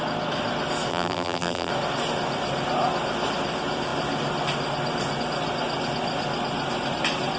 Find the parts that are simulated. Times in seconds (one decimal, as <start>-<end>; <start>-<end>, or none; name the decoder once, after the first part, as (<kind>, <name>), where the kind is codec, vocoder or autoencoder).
0.9-1.7 (vocoder, BigVGAN v2)